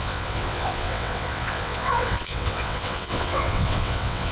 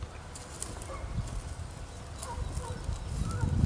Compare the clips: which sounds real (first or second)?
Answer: second